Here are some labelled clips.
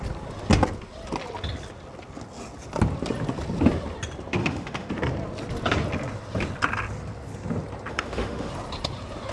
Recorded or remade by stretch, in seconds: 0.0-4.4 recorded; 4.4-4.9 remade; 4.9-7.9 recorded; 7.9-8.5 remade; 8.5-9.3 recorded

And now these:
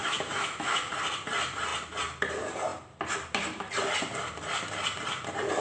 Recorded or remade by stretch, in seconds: 0.0-0.9 remade; 0.9-5.6 recorded

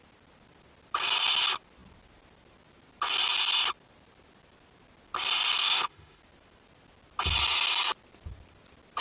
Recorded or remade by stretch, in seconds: 0.0-5.6 recorded; 5.6-6.2 remade; 6.2-9.0 recorded

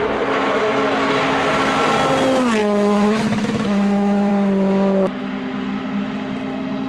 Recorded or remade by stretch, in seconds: 0.0-2.6 recorded; 2.6-4.3 remade; 4.3-6.9 recorded